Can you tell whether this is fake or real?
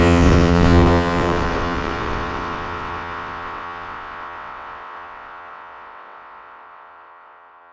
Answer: fake